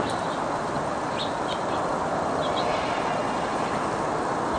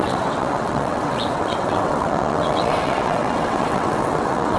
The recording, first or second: first